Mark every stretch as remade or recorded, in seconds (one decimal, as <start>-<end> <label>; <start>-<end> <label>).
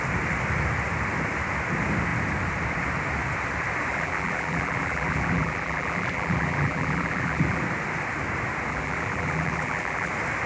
0.0-3.9 recorded; 3.9-7.6 remade; 7.6-8.7 recorded; 8.7-10.1 remade; 10.1-10.5 recorded